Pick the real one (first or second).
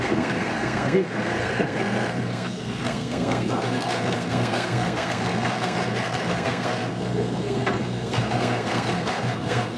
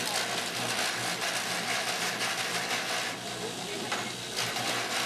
second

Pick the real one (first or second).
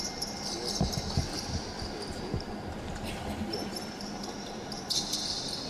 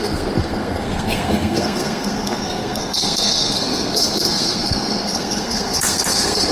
first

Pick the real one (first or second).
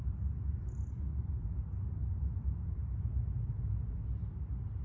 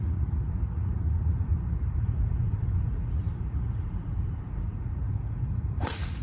first